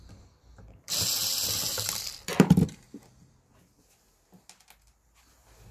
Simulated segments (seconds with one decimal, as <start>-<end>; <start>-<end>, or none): 0.5-3.5